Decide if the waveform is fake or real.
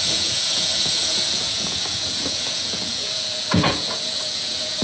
fake